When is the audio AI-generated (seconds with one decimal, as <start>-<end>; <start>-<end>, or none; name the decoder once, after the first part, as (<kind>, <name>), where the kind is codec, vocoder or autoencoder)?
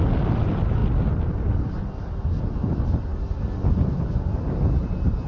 none